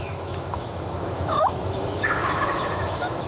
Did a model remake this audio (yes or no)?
yes